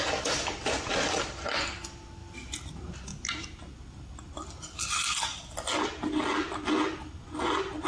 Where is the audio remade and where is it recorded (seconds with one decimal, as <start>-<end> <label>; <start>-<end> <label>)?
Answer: 0.0-7.9 recorded